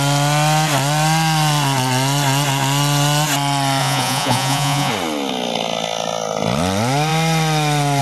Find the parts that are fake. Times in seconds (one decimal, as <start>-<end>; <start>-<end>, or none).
3.8-4.9